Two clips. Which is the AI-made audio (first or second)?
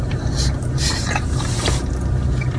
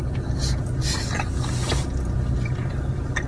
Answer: first